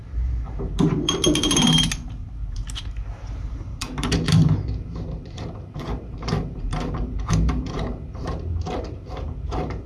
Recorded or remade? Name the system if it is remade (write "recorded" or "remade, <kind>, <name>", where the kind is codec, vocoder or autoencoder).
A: remade, vocoder, BigVGAN v2